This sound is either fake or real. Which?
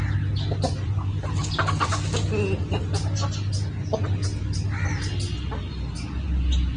real